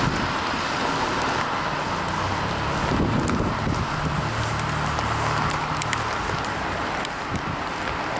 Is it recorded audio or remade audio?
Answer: recorded